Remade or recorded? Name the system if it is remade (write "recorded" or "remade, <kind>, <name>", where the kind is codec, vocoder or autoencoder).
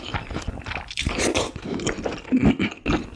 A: recorded